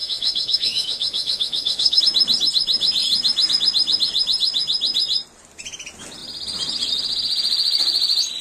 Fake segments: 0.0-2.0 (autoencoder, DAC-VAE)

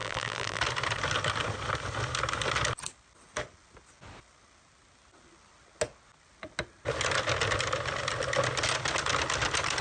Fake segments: 0.0-0.6 (vocoder, BigVGAN v2)

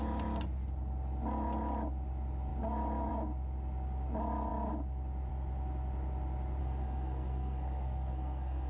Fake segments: 6.6-8.7 (codec, SNAC)

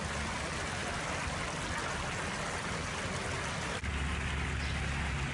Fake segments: none

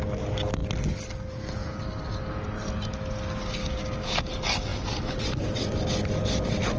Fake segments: 3.6-4.3 (codec, DAC)

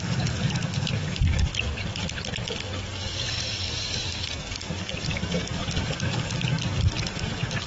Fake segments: 0.0-1.5 (codec, DAC); 2.9-7.7